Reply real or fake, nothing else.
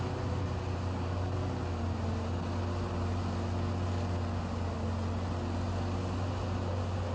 real